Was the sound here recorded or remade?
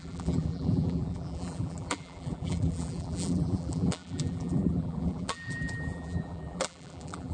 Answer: remade